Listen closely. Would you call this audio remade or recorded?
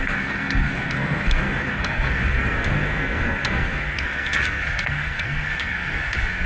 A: remade